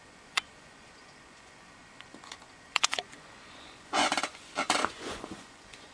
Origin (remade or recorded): remade